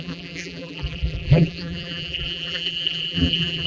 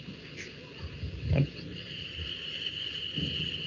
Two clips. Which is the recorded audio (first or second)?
second